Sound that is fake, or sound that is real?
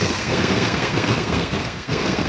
fake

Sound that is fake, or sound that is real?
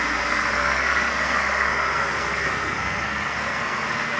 fake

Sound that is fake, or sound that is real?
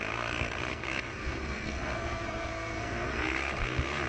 fake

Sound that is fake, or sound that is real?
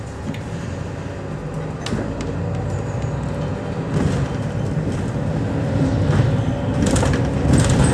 real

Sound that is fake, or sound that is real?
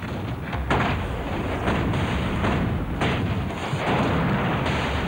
real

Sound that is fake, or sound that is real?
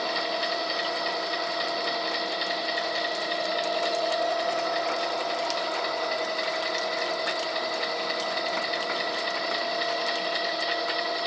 real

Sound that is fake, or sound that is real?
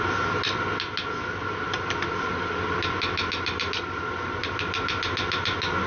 real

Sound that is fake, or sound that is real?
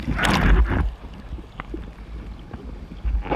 real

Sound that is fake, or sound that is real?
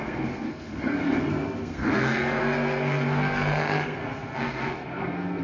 fake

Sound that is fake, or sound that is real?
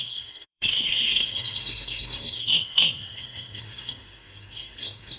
fake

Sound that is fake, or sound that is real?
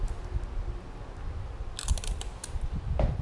real